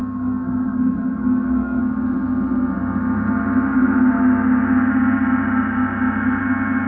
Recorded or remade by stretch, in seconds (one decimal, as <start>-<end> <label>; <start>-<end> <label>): 0.0-1.8 remade; 1.8-6.9 recorded

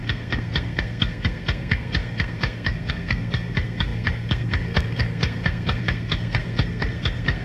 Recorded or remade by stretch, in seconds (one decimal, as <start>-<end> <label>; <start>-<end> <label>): 0.0-7.4 remade

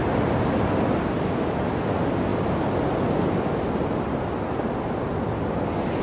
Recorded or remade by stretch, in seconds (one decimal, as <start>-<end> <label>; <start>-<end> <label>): 0.0-6.0 recorded

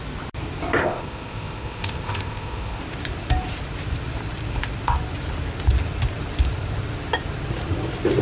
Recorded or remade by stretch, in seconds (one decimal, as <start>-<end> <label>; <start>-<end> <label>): 0.0-0.8 recorded; 0.8-2.8 remade; 2.8-8.2 recorded

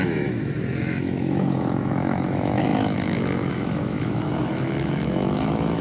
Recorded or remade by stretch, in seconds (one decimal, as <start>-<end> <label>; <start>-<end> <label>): 0.0-5.8 remade

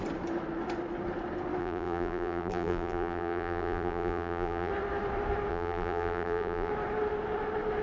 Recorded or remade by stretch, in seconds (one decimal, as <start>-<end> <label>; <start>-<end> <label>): 0.0-1.6 recorded; 1.6-4.7 remade; 4.7-5.5 recorded; 5.5-6.7 remade; 6.7-7.8 recorded